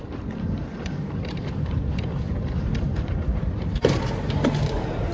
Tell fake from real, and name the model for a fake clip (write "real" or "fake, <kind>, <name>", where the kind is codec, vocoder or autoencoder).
fake, vocoder, BigVGAN v2